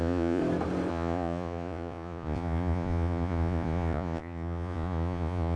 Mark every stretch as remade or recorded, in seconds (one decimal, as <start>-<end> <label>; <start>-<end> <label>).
0.0-0.4 remade; 0.4-0.9 recorded; 0.9-5.6 remade

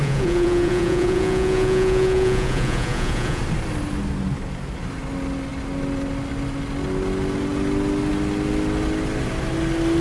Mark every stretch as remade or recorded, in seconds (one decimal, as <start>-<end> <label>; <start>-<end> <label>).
0.0-3.4 remade; 3.4-10.0 recorded

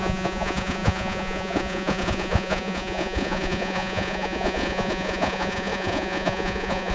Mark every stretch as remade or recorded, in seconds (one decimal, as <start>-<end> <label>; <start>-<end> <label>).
0.0-6.9 remade

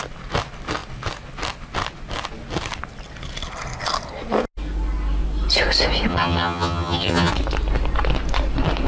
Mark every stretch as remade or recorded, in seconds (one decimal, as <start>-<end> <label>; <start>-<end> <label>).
0.0-6.1 recorded; 6.1-7.3 remade; 7.3-8.9 recorded

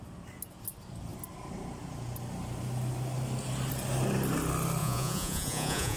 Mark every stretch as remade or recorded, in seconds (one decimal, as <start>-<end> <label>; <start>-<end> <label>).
0.0-4.8 recorded; 4.8-6.0 remade

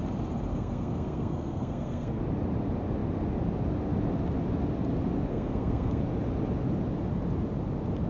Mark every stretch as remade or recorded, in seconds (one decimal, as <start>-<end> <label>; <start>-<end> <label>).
0.0-0.5 recorded; 0.5-2.2 remade; 2.2-5.3 recorded; 5.3-6.0 remade; 6.0-8.1 recorded